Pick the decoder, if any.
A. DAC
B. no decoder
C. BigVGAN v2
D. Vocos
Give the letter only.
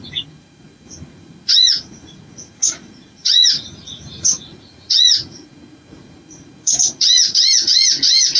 D